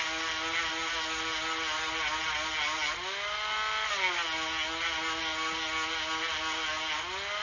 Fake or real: real